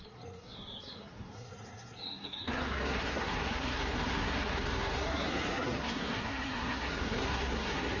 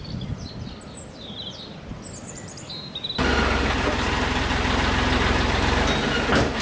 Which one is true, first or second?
second